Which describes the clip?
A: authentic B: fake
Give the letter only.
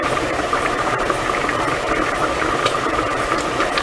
B